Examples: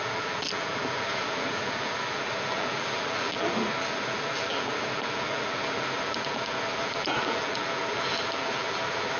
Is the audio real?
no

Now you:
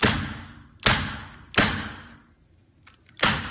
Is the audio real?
yes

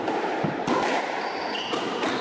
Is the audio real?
yes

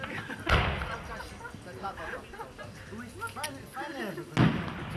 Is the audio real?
yes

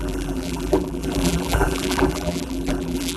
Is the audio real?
no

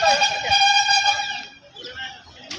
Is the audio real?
no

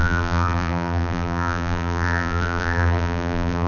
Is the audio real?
no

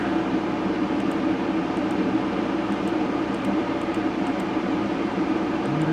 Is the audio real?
no